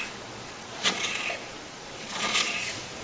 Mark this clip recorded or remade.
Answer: remade